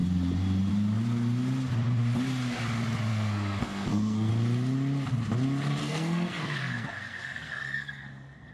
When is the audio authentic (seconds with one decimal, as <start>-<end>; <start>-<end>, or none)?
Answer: 0.0-3.1; 4.3-5.8